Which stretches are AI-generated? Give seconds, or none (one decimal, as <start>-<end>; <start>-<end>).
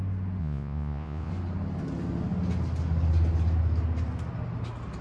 0.4-1.3